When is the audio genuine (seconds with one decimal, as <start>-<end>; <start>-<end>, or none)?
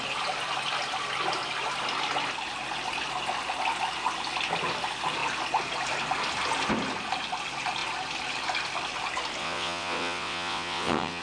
0.0-9.4